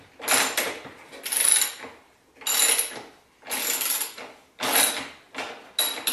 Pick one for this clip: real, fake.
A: real